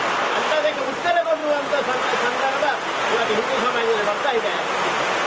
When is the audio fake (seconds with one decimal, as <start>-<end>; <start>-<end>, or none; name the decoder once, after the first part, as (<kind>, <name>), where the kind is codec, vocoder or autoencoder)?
none